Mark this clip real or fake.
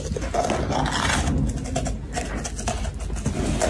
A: real